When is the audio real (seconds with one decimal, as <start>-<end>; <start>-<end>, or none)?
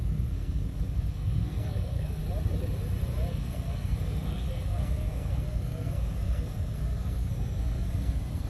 2.2-3.3